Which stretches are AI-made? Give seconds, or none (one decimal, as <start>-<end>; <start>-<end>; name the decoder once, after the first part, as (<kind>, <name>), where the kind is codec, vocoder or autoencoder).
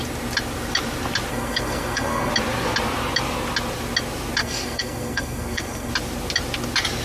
1.3-2.3 (codec, SNAC); 4.4-5.9